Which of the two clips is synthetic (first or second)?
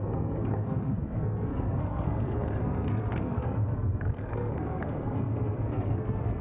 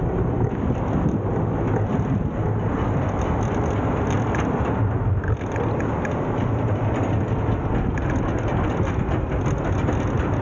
first